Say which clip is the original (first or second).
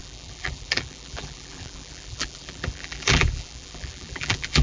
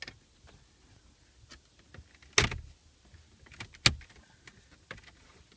second